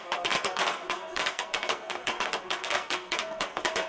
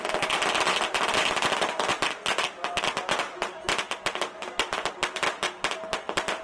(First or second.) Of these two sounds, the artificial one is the first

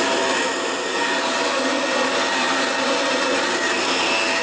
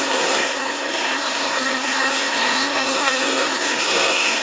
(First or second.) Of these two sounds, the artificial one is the second